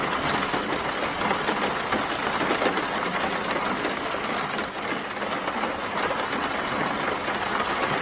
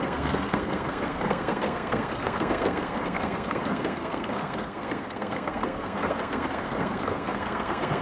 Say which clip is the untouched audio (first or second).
first